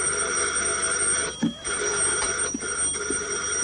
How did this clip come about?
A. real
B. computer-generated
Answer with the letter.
A